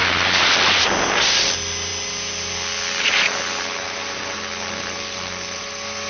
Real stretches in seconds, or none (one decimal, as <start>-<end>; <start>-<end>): 0.0-6.1